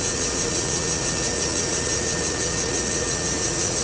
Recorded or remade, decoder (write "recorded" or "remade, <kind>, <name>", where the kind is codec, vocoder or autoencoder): remade, vocoder, Vocos